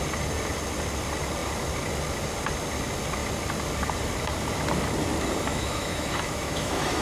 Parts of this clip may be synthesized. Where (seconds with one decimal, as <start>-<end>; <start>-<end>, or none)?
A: 5.5-7.0